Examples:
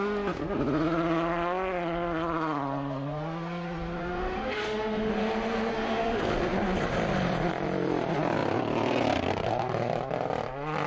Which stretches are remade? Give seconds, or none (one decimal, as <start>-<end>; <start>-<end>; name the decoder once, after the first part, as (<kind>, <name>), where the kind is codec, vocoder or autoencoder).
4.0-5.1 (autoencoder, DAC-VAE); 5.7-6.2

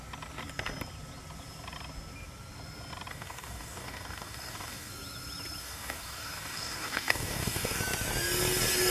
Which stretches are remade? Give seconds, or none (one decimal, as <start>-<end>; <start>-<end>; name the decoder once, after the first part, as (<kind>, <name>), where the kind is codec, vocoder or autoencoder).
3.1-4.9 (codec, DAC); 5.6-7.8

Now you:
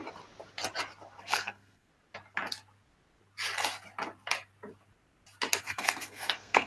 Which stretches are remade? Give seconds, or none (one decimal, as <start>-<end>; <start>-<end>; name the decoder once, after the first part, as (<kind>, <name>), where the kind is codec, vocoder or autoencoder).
1.2-1.9 (codec, SNAC); 5.6-6.7

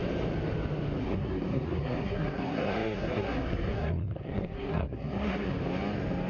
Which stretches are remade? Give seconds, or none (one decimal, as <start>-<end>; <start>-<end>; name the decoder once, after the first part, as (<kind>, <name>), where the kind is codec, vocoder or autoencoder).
1.0-5.5 (codec, SNAC)

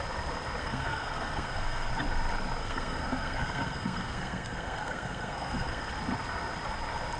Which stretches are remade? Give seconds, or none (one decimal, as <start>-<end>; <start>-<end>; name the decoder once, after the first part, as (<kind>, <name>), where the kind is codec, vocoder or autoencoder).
0.6-1.9 (codec, SNAC); 2.6-5.9

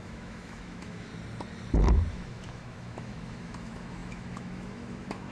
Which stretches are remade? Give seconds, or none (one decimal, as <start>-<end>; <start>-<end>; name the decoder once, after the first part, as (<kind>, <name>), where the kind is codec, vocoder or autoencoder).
0.0-1.1 (autoencoder, DAC-VAE); 2.1-5.3

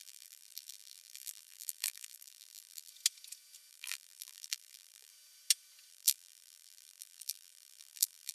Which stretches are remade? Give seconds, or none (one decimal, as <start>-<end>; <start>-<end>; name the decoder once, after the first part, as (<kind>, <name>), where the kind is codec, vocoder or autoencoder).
0.0-2.9 (vocoder, BigVGAN v2); 3.7-5.1; 5.9-8.3